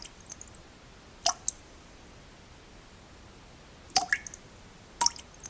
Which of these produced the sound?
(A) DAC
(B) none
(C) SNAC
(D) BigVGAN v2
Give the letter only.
B